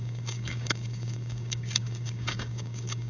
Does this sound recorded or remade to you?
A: remade